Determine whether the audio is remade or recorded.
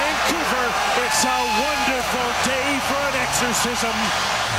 recorded